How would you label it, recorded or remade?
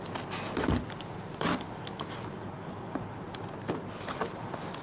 recorded